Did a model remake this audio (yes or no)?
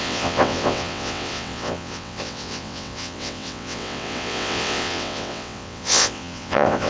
yes